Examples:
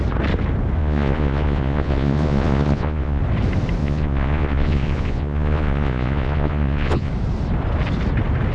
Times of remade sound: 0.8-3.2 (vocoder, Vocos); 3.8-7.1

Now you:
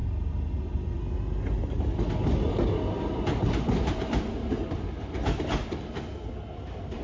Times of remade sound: none

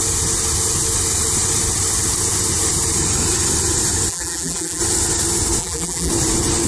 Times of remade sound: 4.1-4.8 (vocoder, BigVGAN v2); 5.6-6.1

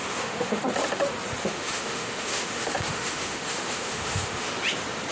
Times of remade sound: 0.0-0.6 (autoencoder, DAC-VAE); 1.4-4.5

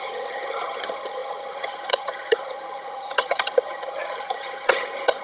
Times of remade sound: 0.0-5.2 (vocoder, HiFi-GAN)